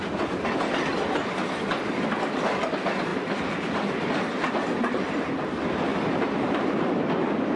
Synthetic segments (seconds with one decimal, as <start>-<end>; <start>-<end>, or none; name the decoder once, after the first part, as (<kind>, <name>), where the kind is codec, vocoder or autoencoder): 3.1-3.9 (vocoder, BigVGAN v2); 5.9-7.0